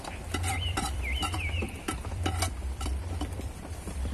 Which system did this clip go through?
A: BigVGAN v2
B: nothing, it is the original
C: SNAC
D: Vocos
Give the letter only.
A